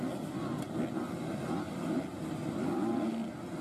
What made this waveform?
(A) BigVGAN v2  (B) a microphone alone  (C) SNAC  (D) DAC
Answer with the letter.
B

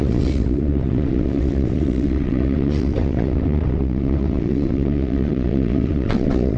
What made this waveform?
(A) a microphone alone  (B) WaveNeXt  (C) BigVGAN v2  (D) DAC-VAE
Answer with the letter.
B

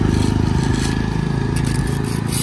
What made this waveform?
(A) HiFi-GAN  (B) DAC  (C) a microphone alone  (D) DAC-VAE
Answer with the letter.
C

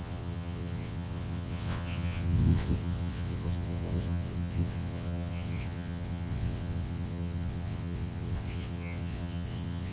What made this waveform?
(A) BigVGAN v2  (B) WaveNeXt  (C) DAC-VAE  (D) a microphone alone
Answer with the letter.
B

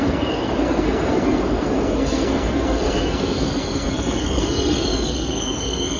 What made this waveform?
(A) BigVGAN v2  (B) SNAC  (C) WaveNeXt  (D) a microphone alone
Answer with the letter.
B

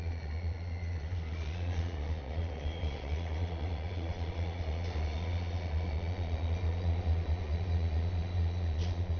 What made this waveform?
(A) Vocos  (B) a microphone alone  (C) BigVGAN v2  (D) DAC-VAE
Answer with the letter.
A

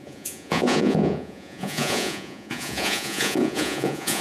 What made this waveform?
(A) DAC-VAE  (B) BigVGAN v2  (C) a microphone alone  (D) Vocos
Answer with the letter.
D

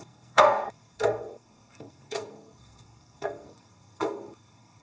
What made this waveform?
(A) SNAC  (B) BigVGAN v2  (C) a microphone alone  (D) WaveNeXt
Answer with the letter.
A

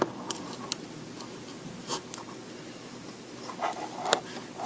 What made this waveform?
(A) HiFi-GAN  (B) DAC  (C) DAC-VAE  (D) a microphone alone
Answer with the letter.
D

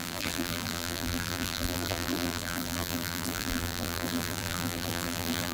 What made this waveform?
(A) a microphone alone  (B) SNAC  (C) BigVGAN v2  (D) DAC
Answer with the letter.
C